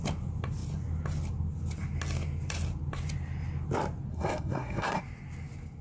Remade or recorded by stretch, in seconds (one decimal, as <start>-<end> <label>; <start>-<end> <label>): 0.0-4.1 recorded; 4.1-5.0 remade; 5.0-5.8 recorded